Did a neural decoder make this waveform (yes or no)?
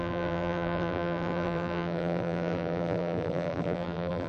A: yes